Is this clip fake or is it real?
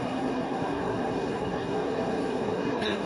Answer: fake